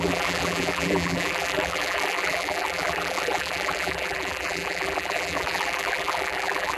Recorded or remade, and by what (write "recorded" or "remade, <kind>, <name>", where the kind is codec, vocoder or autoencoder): remade, vocoder, BigVGAN v2